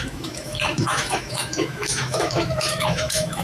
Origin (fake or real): fake